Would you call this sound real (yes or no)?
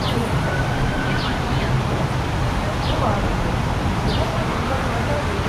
yes